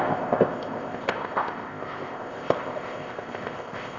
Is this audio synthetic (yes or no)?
yes